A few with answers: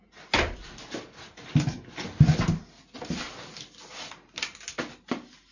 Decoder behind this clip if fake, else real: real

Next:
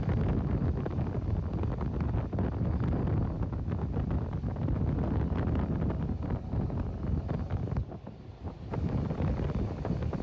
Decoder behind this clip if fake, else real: real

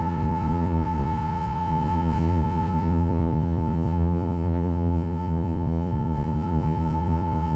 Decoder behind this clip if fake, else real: fake, vocoder, Vocos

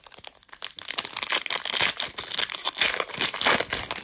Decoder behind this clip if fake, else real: real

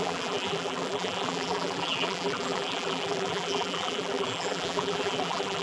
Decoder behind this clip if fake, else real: fake, vocoder, BigVGAN v2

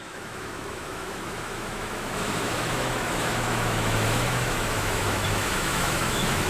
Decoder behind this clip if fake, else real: fake, autoencoder, DAC-VAE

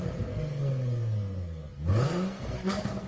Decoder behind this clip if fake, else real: fake, codec, SNAC